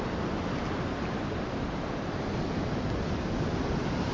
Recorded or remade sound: recorded